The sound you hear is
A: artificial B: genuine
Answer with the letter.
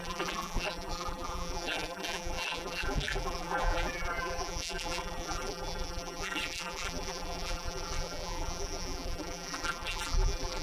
A